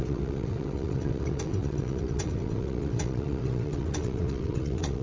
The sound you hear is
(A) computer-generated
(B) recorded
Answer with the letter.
A